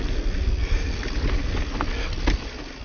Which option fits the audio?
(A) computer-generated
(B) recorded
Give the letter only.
B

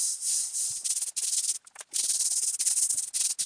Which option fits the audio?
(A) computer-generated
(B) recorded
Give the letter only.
B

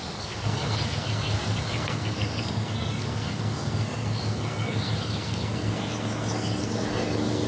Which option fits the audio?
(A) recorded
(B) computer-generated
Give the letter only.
B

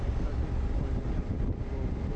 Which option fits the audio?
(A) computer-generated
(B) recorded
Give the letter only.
B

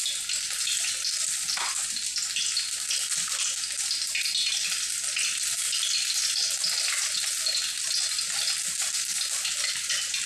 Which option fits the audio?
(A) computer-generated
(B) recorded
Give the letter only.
B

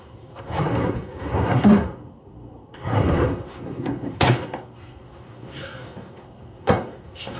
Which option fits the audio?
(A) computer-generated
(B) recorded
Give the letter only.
A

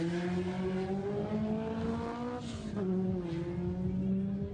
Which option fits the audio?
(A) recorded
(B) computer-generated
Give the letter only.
A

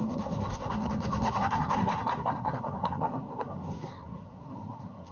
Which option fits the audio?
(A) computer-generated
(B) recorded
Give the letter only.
A